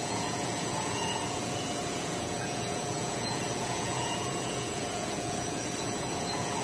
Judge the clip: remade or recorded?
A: remade